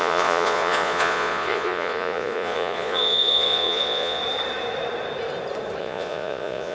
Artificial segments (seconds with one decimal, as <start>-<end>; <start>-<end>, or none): 0.0-4.2; 5.8-6.7